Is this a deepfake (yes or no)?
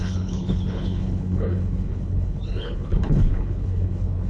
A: yes